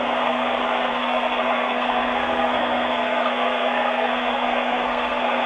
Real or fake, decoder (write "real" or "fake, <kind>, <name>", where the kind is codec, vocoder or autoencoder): fake, codec, SNAC